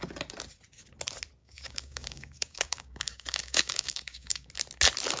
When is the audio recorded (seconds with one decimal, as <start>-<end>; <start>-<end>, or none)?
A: 0.0-1.4; 4.5-5.2